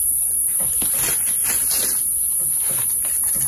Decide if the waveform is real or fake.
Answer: real